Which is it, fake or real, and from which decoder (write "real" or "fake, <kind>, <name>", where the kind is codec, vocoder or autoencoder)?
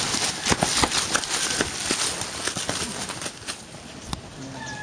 real